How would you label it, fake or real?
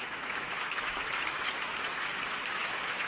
fake